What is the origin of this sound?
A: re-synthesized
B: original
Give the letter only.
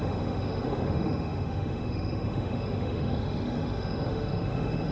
A